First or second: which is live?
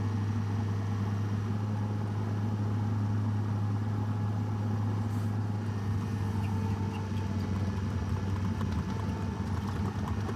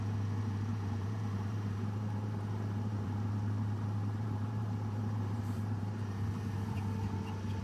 first